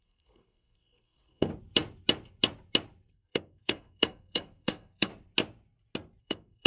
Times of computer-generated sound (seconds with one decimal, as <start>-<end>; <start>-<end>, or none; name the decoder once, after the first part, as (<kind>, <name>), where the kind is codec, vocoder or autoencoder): 0.0-1.5 (codec, SNAC); 3.1-5.1; 6.2-6.7